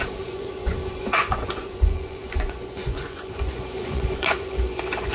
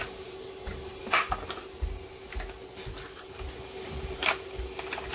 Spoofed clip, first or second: first